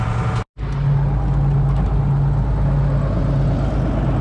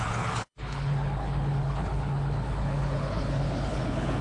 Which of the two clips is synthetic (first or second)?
second